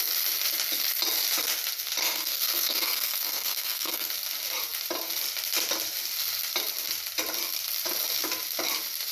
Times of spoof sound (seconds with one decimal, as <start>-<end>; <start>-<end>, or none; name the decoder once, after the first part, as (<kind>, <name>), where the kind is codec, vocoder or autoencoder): 2.0-4.1 (codec, SNAC)